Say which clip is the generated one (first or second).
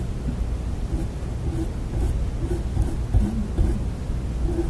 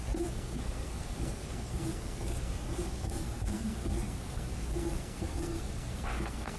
second